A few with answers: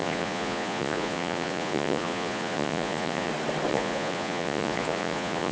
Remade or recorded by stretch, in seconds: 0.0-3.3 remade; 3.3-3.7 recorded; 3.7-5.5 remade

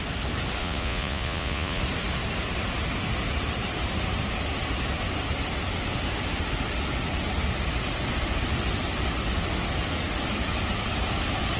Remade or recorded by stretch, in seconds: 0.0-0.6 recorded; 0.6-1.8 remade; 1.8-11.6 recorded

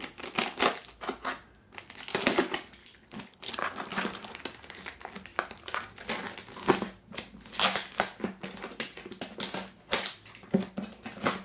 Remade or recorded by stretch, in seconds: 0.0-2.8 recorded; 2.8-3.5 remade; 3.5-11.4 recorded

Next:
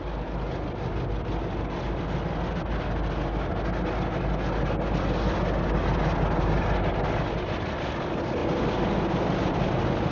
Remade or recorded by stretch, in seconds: 0.0-10.1 recorded

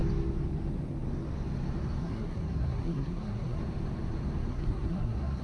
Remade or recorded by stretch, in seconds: 0.0-2.0 recorded; 2.0-3.6 remade; 3.6-4.5 recorded; 4.5-5.4 remade

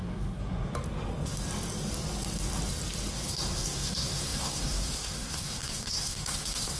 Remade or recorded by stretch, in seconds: 0.0-0.7 remade; 0.7-3.1 recorded; 3.1-6.8 remade

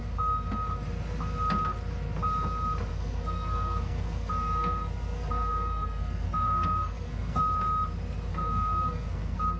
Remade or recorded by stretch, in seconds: 0.0-2.9 recorded; 2.9-7.4 remade; 7.4-8.3 recorded; 8.3-9.6 remade